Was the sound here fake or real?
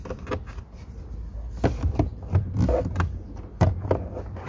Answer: real